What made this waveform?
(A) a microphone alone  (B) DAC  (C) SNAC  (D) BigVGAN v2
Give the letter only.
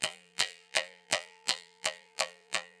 D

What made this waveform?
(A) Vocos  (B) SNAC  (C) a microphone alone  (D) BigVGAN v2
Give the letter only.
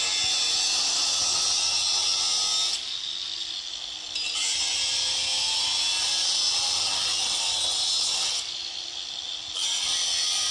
C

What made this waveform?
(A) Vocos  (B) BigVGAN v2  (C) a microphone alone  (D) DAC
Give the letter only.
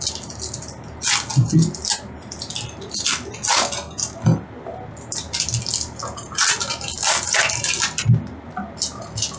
C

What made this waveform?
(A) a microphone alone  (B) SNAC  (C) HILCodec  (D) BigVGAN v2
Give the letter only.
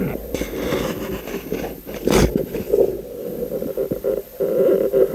A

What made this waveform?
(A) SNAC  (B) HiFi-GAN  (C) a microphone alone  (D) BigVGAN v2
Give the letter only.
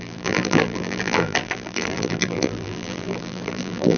D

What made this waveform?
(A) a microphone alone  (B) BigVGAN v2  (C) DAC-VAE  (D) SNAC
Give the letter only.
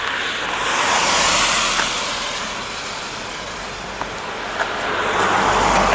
A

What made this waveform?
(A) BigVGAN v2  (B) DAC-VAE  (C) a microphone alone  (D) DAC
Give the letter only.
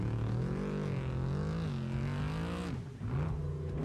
C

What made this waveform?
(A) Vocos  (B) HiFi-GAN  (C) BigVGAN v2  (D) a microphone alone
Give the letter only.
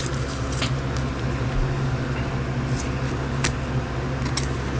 D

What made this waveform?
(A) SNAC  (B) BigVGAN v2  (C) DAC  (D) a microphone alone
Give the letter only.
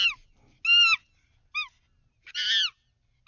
D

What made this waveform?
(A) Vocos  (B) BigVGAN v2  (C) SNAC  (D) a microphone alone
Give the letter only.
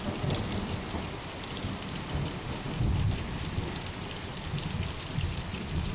B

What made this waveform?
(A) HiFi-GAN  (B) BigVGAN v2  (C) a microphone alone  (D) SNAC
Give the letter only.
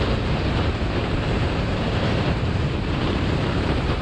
B